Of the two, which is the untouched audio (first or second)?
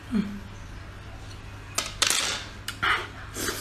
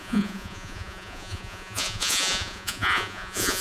first